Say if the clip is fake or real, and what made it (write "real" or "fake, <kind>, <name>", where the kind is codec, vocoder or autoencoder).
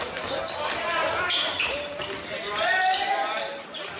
real